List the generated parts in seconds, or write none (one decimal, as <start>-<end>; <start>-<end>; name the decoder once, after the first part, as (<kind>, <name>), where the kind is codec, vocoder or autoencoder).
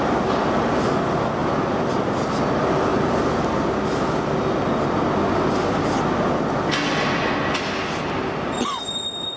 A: none